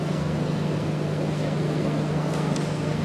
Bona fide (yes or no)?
no